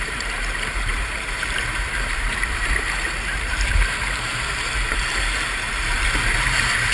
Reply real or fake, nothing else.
fake